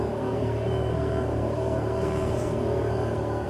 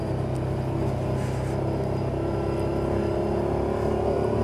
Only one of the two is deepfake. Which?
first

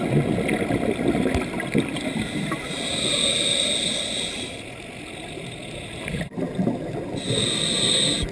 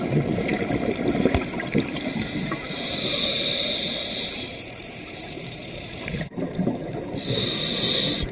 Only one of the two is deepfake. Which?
second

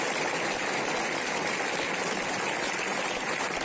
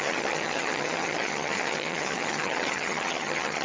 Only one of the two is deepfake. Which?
second